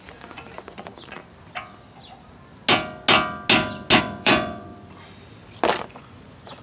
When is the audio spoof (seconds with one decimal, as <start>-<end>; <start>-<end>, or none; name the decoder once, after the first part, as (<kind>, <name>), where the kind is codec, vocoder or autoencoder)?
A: 0.0-1.2 (vocoder, Vocos); 4.0-4.7; 5.8-6.6